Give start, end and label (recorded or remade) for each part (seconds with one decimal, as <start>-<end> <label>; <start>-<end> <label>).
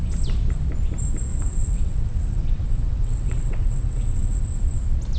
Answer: 0.0-1.3 recorded; 1.3-4.4 remade; 4.4-5.2 recorded